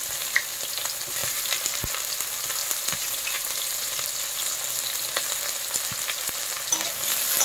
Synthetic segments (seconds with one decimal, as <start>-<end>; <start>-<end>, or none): 1.2-1.9; 2.6-4.1